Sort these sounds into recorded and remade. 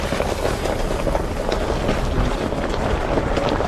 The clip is recorded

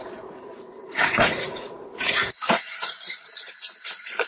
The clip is remade